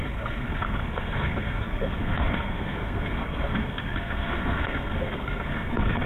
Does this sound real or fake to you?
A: fake